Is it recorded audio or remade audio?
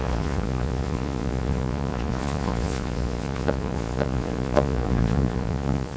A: remade